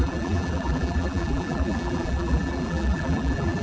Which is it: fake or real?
fake